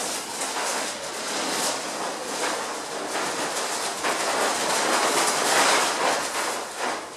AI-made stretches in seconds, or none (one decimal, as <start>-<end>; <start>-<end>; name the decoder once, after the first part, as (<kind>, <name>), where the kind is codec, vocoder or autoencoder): 0.6-1.1 (autoencoder, DAC-VAE)